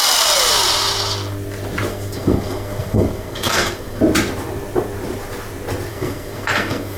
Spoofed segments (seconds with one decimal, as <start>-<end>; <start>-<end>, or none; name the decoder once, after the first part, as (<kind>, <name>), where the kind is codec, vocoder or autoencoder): 1.9-4.0 (codec, SNAC); 5.9-7.0